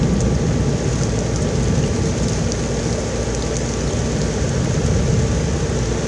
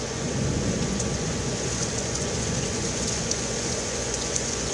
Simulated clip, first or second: second